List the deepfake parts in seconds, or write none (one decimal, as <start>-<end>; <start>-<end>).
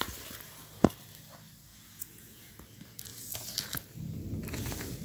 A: 1.7-2.5